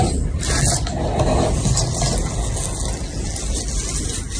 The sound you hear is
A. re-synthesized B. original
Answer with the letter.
B